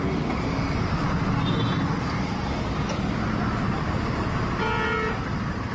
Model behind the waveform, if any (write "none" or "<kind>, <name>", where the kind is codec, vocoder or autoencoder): none